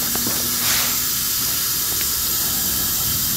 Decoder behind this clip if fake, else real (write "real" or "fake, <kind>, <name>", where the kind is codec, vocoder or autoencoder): real